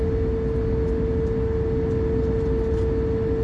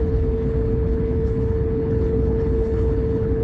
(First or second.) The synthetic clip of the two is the second